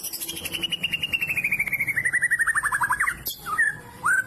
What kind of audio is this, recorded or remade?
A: recorded